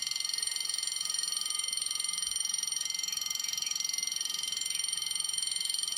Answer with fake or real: fake